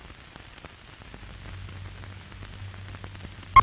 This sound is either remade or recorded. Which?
recorded